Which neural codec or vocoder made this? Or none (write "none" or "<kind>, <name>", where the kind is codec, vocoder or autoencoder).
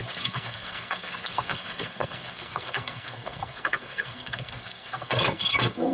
codec, SNAC